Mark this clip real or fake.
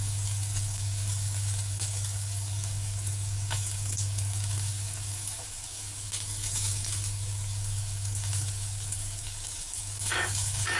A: fake